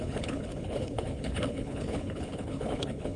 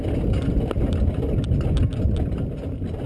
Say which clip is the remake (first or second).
first